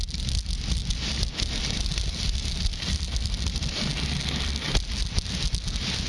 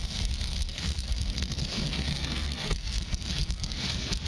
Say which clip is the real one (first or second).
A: first